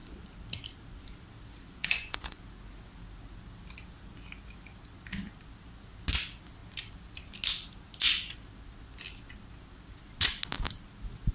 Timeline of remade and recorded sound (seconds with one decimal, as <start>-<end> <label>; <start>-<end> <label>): 0.0-1.8 recorded; 1.8-2.4 remade; 2.4-11.3 recorded